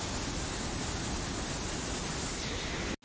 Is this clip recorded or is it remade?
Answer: recorded